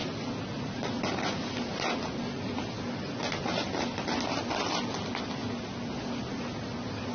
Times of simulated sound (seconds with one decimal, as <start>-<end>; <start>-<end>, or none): none